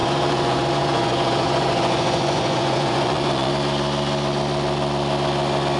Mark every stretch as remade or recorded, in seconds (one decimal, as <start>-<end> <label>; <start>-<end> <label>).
0.0-3.5 remade; 3.5-5.8 recorded